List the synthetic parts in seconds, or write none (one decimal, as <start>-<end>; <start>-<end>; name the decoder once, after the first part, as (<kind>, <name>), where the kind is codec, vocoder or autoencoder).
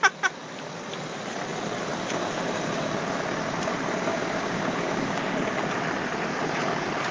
4.1-5.7 (codec, DAC)